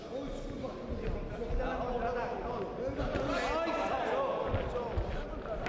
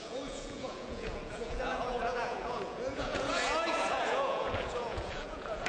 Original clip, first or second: first